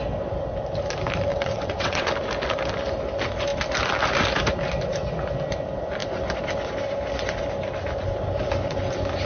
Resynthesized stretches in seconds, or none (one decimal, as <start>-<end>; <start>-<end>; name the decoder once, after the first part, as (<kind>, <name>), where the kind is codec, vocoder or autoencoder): 1.3-2.1 (vocoder, WaveNeXt)

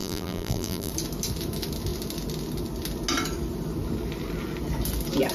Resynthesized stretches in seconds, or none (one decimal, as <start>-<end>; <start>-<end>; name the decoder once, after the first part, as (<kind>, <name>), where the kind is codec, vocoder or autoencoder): 0.0-0.9 (vocoder, BigVGAN v2)

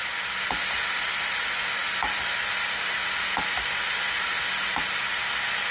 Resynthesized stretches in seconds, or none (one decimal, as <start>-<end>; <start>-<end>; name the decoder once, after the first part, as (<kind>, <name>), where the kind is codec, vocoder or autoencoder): none

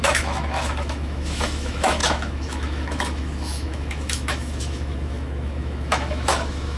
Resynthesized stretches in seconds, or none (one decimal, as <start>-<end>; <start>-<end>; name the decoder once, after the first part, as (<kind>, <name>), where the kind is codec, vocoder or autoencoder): 0.0-6.8 (autoencoder, DAC-VAE)

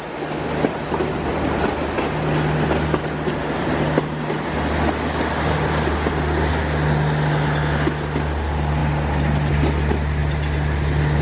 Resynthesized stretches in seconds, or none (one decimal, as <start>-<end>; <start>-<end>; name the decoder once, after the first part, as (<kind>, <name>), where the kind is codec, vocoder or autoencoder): none